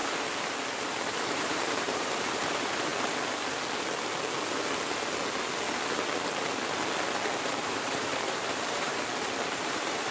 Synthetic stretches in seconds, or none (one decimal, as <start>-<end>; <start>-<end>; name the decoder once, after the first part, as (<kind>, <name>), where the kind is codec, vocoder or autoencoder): 1.3-2.9 (vocoder, BigVGAN v2); 7.4-8.9; 9.6-10.1